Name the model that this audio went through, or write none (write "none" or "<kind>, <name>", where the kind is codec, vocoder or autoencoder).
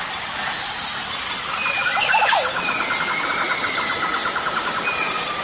none